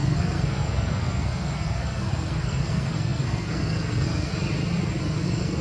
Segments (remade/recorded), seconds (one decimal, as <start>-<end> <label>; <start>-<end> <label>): 0.0-4.3 remade; 4.3-5.0 recorded; 5.0-5.6 remade